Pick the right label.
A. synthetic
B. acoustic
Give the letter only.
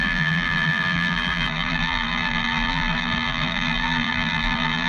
A